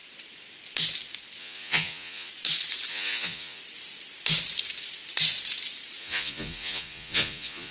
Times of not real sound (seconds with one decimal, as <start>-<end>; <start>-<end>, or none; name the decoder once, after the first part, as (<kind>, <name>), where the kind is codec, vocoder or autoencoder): 1.4-2.3 (vocoder, Vocos); 2.9-3.6; 6.0-7.7